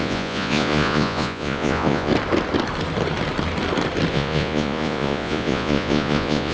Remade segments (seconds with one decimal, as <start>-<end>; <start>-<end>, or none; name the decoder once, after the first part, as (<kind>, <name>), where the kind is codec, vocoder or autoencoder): 0.0-2.1 (vocoder, Vocos); 4.1-6.5